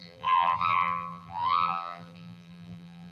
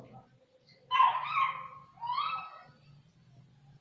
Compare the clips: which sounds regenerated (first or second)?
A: first